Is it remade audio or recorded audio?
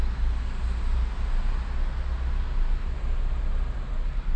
recorded